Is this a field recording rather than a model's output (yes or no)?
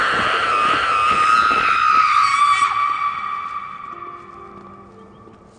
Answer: yes